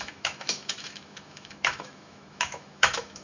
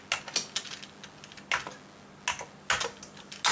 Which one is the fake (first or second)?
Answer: first